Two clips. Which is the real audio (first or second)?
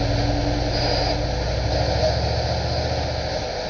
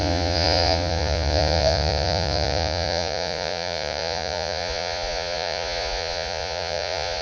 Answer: first